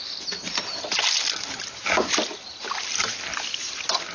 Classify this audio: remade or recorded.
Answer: recorded